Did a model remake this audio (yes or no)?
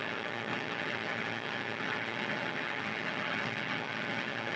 yes